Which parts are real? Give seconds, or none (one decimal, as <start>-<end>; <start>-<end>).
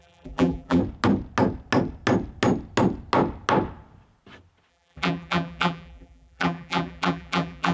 0.8-4.7